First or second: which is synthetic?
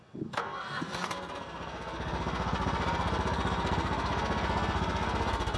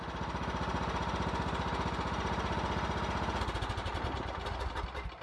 first